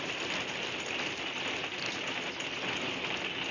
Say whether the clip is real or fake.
real